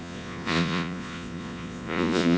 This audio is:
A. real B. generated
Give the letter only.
B